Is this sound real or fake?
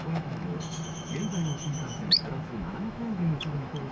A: fake